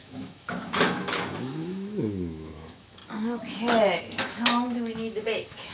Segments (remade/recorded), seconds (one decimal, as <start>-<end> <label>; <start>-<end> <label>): 0.0-3.0 remade; 3.0-4.0 recorded; 4.0-5.7 remade